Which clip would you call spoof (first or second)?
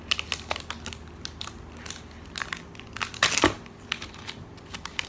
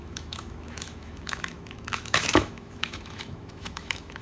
second